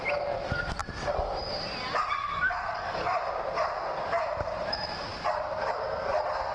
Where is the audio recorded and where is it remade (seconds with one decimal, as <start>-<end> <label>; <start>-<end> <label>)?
0.0-2.2 recorded; 2.2-3.2 remade; 3.2-6.5 recorded